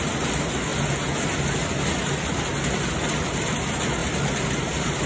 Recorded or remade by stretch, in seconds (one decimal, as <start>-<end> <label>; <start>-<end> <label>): 0.0-4.0 recorded; 4.0-5.1 remade